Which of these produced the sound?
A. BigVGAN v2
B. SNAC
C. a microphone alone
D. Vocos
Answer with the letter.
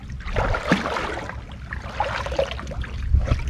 C